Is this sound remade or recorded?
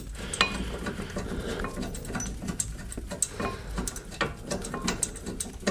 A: recorded